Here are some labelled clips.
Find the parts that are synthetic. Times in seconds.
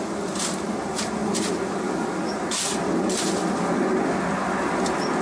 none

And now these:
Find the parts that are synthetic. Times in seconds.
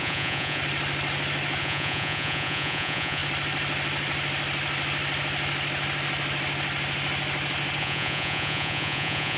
0.0-0.6 (vocoder, Vocos); 1.6-3.2; 7.8-9.4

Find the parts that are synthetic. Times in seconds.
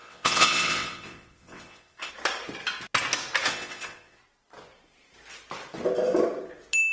0.0-2.1 (vocoder, WaveNeXt); 3.5-4.2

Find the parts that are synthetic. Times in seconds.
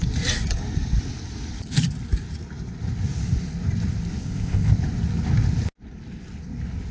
4.2-4.7 (codec, ZipCodec)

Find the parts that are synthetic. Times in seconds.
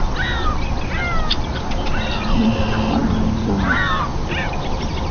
none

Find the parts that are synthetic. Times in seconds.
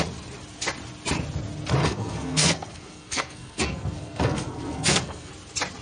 1.8-5.3 (codec, SNAC)